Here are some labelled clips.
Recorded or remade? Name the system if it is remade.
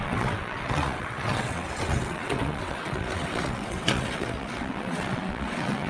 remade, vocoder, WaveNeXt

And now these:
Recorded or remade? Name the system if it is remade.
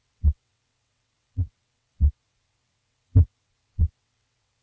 remade, vocoder, WaveNeXt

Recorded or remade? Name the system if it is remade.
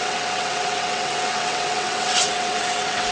remade, vocoder, WaveNeXt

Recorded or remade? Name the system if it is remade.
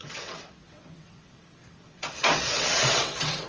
remade, vocoder, WaveNeXt